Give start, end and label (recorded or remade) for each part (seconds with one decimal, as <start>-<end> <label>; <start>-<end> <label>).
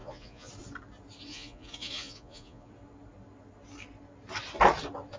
0.0-0.5 remade; 0.5-1.3 recorded; 1.3-2.7 remade; 2.7-5.2 recorded